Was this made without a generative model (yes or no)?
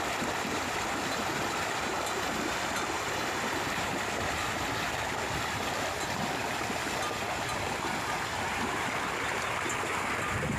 yes